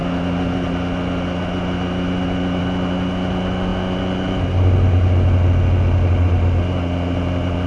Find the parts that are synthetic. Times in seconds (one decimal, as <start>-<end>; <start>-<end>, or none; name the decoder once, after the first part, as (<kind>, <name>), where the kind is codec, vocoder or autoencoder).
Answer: none